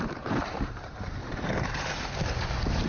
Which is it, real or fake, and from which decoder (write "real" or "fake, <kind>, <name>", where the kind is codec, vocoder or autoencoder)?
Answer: fake, vocoder, BigVGAN v2